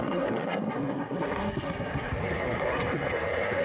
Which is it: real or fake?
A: fake